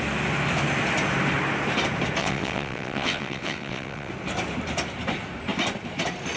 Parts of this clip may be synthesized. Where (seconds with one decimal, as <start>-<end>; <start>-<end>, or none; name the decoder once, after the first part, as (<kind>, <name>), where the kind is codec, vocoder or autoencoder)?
2.2-4.1 (vocoder, WaveNeXt)